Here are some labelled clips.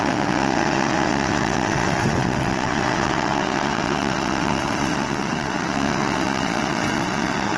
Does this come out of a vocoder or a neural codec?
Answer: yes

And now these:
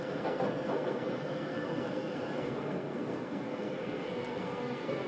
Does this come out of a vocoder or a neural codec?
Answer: yes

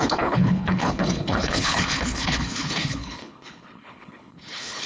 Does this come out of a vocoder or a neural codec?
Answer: yes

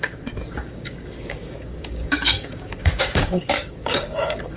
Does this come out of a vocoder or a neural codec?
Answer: yes